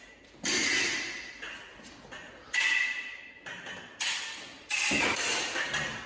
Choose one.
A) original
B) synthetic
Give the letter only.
A